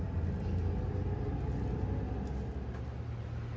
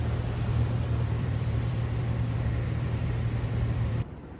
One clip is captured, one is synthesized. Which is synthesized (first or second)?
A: second